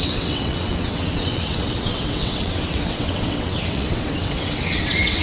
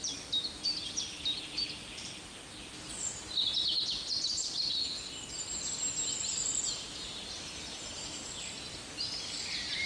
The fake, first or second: first